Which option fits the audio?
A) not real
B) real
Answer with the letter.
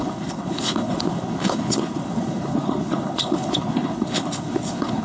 A